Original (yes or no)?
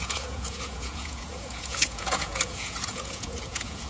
no